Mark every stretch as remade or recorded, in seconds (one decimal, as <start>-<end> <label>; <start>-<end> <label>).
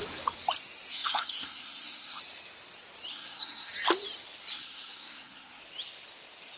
0.0-0.9 recorded; 0.9-2.2 remade; 2.2-3.1 recorded; 3.1-3.7 remade; 3.7-4.5 recorded; 4.5-5.6 remade; 5.6-6.6 recorded